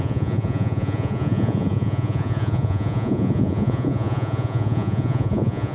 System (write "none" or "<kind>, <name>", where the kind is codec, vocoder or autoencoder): vocoder, Vocos